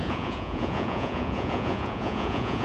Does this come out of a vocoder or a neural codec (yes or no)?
yes